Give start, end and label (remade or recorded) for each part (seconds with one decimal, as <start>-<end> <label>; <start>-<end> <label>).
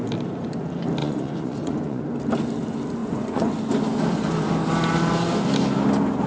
0.0-1.0 recorded; 1.0-2.0 remade; 2.0-3.0 recorded; 3.0-3.5 remade; 3.5-6.3 recorded